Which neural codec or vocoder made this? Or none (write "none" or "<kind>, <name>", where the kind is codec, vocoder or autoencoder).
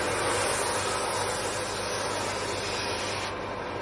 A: none